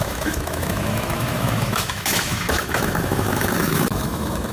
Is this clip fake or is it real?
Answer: fake